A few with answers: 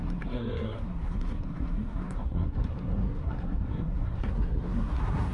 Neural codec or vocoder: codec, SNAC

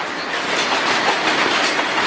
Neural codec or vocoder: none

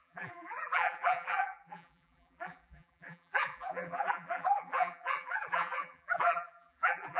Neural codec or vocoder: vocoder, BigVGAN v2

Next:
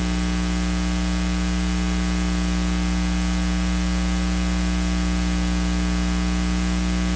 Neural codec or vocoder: none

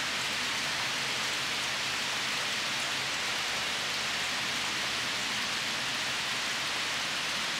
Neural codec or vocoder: none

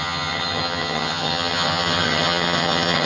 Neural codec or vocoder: vocoder, HiFi-GAN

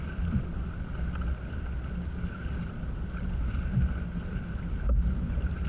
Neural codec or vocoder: none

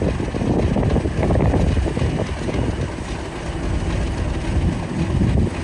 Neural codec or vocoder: none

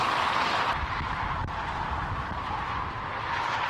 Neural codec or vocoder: none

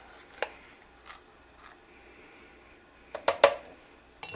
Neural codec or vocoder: none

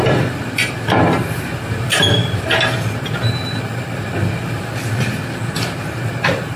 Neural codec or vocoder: none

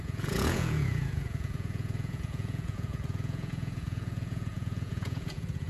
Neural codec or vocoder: vocoder, Vocos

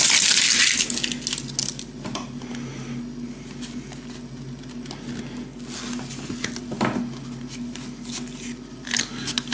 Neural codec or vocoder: none